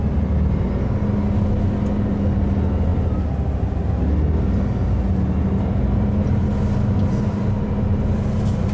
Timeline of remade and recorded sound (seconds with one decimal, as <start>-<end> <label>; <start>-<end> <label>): 0.0-8.7 recorded